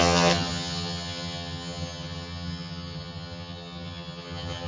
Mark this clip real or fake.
fake